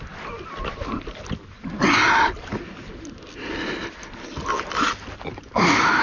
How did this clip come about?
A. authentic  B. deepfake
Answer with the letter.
A